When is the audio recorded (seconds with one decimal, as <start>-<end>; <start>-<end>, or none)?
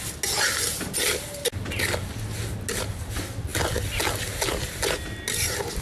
0.0-5.8